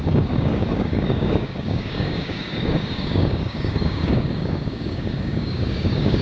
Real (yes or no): no